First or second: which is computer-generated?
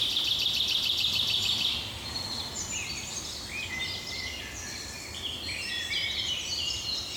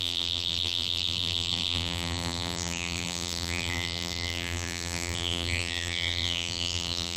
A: second